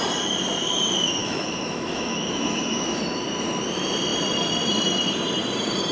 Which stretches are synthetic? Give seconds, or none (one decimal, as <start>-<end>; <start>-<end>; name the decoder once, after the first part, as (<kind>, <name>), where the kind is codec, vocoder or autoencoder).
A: 1.2-3.0 (autoencoder, DAC-VAE)